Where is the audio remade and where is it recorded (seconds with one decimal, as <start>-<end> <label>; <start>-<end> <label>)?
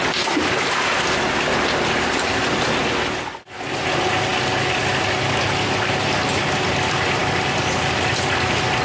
0.0-8.8 recorded